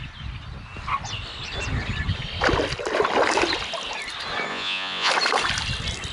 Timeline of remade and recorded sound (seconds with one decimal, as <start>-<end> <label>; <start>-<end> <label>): 0.0-4.5 recorded; 4.5-5.1 remade; 5.1-6.1 recorded